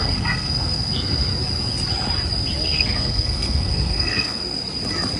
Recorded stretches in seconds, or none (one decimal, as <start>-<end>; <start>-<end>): 1.3-2.6; 4.4-5.2